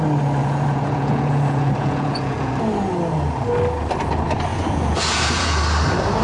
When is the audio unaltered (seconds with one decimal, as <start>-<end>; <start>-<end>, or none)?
0.0-0.4; 2.5-4.5; 5.6-6.2